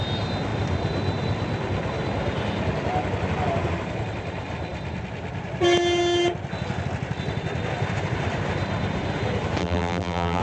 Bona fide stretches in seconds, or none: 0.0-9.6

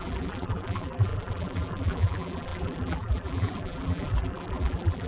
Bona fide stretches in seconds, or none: none

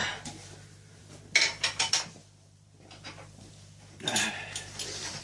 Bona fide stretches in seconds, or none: 1.0-2.2

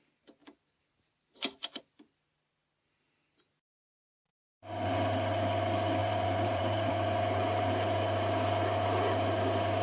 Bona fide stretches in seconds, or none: 0.0-0.4; 1.8-6.0; 6.9-9.8

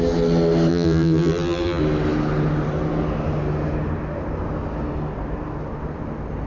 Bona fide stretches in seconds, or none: 0.0-0.7; 1.8-6.5

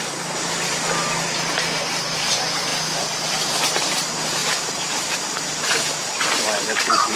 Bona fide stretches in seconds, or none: 0.0-2.7; 3.3-4.4; 5.6-7.2